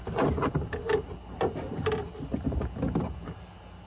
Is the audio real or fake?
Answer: real